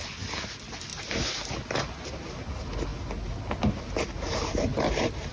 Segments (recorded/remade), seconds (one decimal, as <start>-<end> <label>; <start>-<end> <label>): 0.0-5.3 recorded